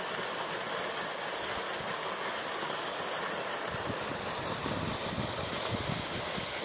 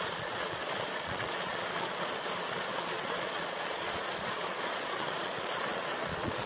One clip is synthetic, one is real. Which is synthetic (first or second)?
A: second